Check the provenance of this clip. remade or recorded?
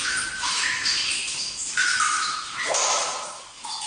remade